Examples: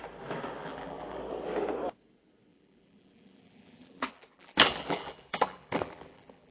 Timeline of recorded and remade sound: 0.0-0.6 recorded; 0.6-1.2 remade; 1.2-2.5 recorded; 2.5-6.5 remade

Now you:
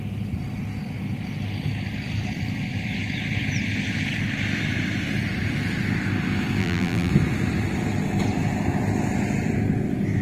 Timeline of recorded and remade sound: 0.0-6.6 recorded; 6.6-7.1 remade; 7.1-10.2 recorded

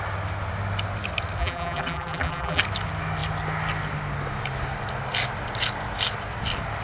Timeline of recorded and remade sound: 0.0-1.4 recorded; 1.4-2.6 remade; 2.6-6.8 recorded